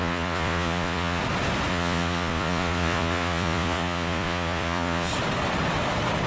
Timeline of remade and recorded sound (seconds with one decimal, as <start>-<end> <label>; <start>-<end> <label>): 0.0-1.2 remade; 1.2-1.7 recorded; 1.7-5.1 remade; 5.1-6.3 recorded